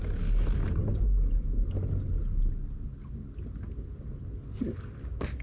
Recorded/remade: recorded